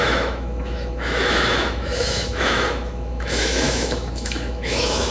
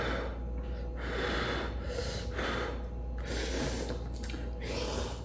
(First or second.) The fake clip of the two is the first